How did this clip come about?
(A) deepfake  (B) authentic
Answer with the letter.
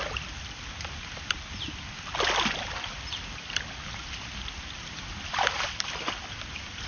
B